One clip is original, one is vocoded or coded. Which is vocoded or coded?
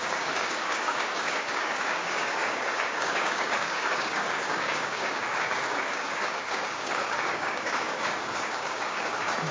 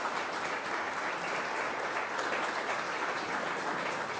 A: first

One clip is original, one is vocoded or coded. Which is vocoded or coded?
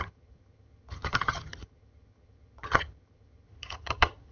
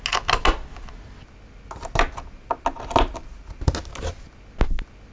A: first